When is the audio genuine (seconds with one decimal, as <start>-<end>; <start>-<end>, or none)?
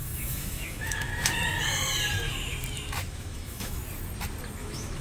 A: 1.1-3.1; 3.8-4.6